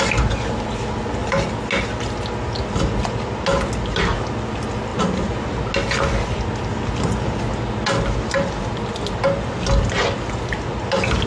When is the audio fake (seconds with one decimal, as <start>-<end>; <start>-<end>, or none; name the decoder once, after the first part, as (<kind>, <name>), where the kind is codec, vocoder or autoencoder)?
none